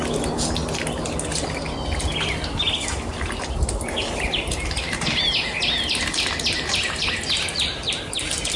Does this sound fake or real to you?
real